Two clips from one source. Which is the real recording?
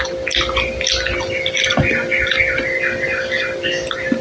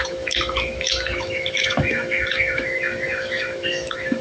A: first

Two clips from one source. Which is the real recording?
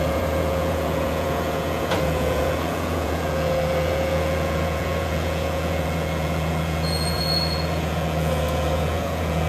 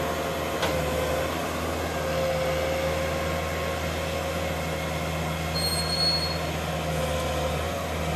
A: second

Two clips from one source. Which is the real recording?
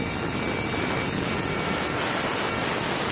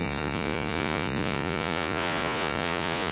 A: first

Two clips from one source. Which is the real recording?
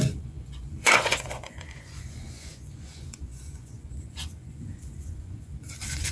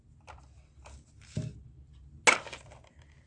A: second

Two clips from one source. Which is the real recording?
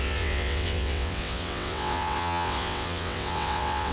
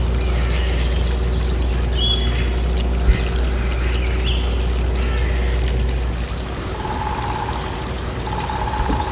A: second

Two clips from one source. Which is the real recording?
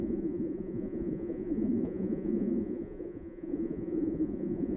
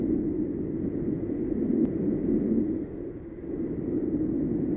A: second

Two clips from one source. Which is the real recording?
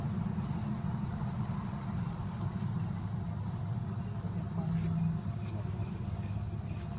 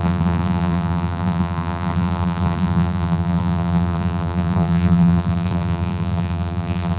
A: first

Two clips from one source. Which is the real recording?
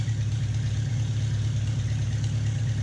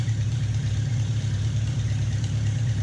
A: first